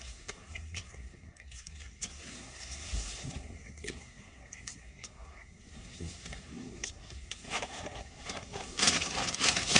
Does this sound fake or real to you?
fake